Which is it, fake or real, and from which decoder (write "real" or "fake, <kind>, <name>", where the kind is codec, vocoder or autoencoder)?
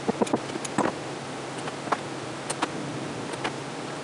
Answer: real